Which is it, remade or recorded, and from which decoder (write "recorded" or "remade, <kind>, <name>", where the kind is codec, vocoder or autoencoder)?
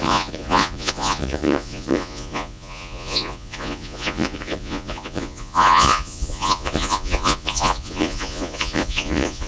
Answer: remade, vocoder, Vocos